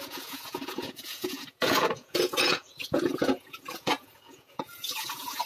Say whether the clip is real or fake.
fake